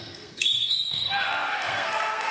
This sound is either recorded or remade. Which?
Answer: remade